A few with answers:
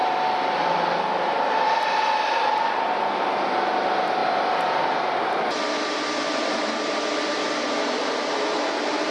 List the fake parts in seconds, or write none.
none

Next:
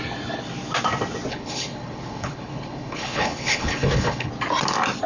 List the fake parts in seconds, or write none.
1.3-4.3 (codec, HILCodec)

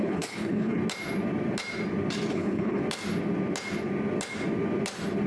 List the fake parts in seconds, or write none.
0.0-0.8 (codec, HILCodec); 2.3-2.8

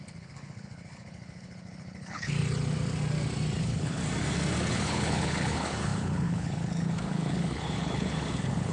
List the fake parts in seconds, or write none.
0.0-2.4 (codec, HILCodec); 3.6-4.0; 4.7-8.7

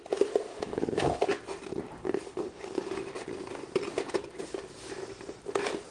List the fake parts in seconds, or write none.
0.5-1.2 (codec, HILCodec); 2.0-2.9

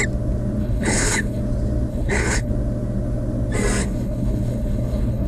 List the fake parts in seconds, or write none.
0.6-1.4 (codec, HILCodec); 1.9-2.5; 3.8-5.3